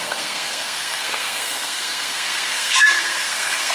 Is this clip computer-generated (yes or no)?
yes